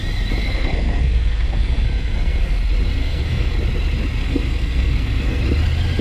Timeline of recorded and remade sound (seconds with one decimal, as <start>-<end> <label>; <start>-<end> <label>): 0.0-0.4 recorded; 0.4-2.6 remade; 2.6-3.0 recorded; 3.0-3.5 remade; 3.5-4.2 recorded; 4.2-5.4 remade; 5.4-6.0 recorded